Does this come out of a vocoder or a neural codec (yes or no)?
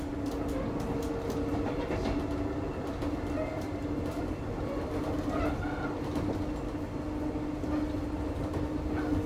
no